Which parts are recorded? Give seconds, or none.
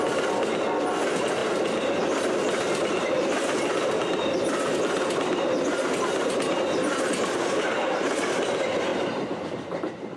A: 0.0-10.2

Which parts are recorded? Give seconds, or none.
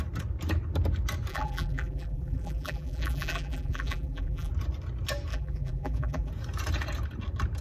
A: 0.0-1.3; 4.5-5.3; 6.3-7.6